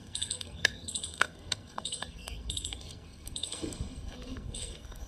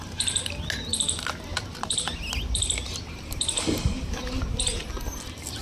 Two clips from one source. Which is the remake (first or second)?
first